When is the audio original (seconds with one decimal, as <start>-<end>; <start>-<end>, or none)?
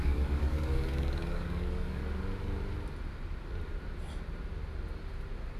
2.0-5.6